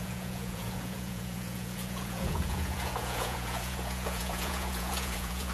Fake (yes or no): yes